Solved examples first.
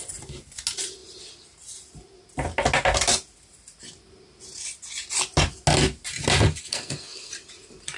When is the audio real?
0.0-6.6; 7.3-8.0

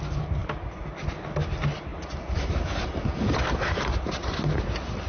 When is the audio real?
0.0-5.1

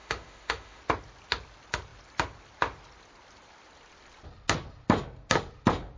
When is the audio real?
0.8-6.0

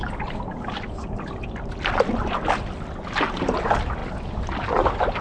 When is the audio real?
0.0-5.2

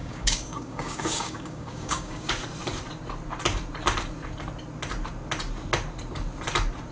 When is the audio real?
2.3-6.9

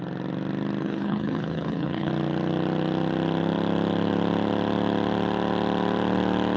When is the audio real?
0.0-0.8; 2.1-6.6

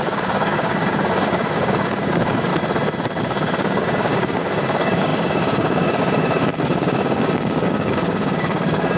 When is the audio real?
2.5-3.2

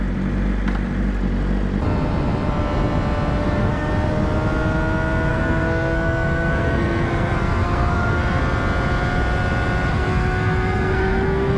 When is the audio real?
0.0-3.4; 3.9-5.3; 8.4-9.9